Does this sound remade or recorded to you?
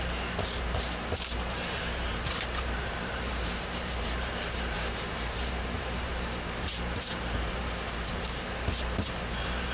remade